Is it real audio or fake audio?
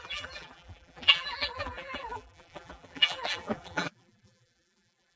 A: fake